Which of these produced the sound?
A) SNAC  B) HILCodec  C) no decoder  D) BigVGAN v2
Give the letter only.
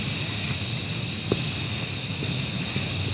C